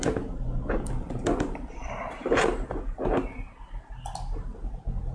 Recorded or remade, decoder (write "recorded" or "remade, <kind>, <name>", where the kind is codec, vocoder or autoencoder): recorded